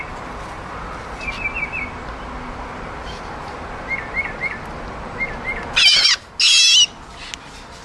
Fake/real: real